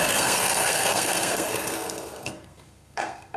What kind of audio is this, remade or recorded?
remade